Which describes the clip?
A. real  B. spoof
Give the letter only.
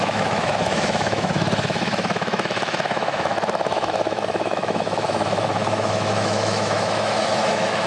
B